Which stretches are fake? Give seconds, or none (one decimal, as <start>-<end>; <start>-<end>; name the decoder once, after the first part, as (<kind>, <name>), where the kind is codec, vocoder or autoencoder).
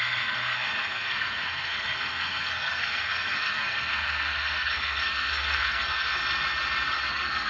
0.0-6.2 (codec, SNAC); 7.1-7.5